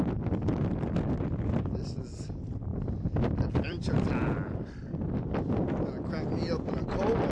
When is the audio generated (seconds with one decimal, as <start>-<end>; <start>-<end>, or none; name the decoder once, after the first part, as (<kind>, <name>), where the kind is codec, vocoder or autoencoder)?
2.7-5.5 (vocoder, BigVGAN v2)